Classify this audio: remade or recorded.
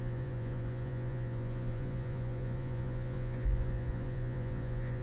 remade